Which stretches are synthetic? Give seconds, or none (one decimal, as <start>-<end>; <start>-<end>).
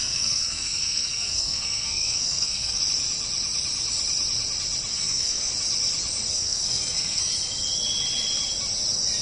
0.0-2.8; 4.9-5.5; 6.3-7.3